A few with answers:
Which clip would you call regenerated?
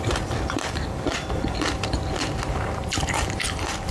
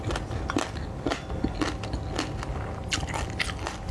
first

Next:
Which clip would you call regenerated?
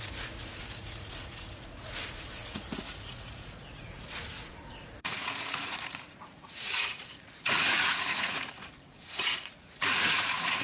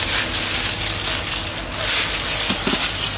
first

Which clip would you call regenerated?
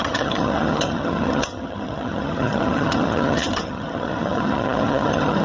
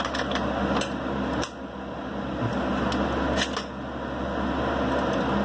first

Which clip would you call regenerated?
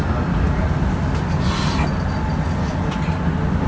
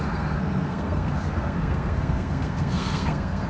second